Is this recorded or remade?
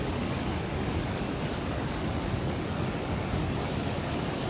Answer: remade